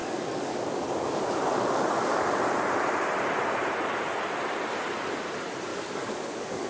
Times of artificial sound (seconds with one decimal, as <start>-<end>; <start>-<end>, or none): 0.0-2.2; 5.7-6.7